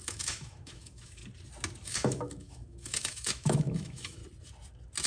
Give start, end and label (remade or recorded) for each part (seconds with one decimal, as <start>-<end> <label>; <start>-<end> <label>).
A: 0.0-1.2 remade; 1.2-1.8 recorded; 1.8-4.2 remade; 4.2-5.1 recorded